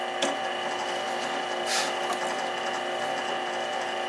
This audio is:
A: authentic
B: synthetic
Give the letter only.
A